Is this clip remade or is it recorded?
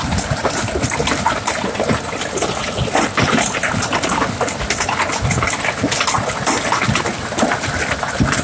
recorded